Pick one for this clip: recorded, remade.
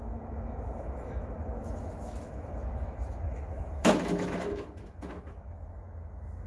remade